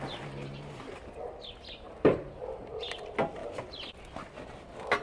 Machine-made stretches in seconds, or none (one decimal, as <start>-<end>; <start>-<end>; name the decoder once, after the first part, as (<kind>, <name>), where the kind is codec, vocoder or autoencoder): none